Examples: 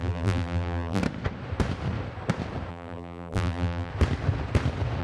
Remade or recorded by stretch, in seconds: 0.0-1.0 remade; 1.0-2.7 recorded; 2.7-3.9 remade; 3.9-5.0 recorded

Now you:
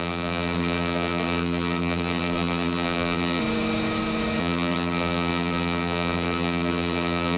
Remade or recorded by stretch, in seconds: 0.0-3.4 remade; 3.4-4.4 recorded; 4.4-7.4 remade

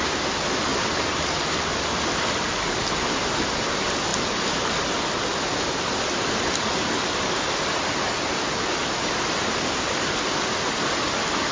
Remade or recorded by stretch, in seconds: 0.0-11.5 recorded

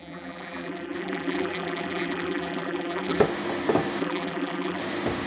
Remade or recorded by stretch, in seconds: 0.0-3.2 remade; 3.2-4.0 recorded; 4.0-4.8 remade; 4.8-5.3 recorded

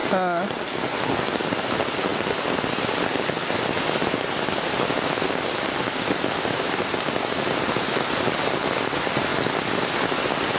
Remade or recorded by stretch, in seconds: 0.0-10.6 recorded